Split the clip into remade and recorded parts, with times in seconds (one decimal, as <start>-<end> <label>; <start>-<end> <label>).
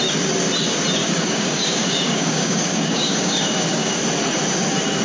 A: 0.0-1.0 recorded; 1.0-4.0 remade; 4.0-5.0 recorded